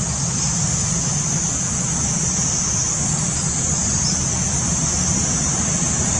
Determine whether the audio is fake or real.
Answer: real